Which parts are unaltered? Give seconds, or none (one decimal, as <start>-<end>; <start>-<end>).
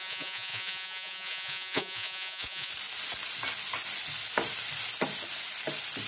2.7-6.1